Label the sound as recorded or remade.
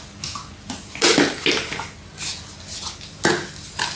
recorded